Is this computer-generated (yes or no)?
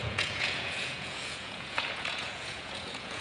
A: yes